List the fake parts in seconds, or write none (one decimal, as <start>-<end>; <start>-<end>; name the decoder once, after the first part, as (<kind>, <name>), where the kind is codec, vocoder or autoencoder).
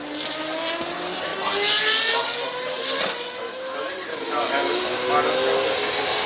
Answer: 4.1-4.8 (autoencoder, DAC-VAE)